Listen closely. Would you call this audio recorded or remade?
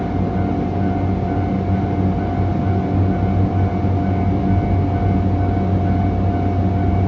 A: recorded